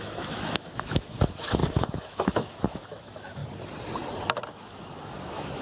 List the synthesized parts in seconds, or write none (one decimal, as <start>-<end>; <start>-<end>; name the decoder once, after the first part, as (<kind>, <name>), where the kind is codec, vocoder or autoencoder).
0.0-3.4 (autoencoder, DAC-VAE); 4.5-5.6